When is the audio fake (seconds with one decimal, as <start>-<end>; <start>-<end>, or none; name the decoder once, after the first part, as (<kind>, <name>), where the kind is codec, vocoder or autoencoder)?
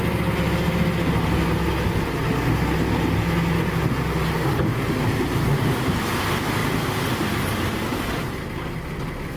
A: none